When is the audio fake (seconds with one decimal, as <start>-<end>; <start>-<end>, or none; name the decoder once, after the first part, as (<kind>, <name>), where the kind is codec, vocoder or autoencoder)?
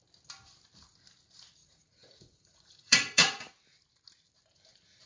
1.6-3.5 (vocoder, Vocos)